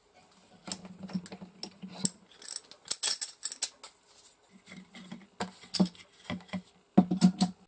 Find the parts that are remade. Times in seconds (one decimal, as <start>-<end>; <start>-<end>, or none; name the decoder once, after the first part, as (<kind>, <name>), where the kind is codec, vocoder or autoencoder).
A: none